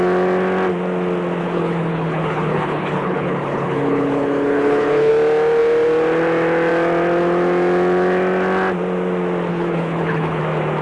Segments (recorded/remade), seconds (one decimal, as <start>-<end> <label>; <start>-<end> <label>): 0.0-1.4 recorded; 1.4-5.1 remade; 5.1-9.5 recorded; 9.5-10.4 remade; 10.4-10.8 recorded